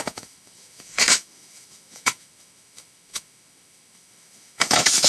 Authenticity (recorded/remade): remade